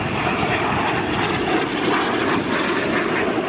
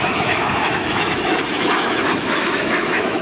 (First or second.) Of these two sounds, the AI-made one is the second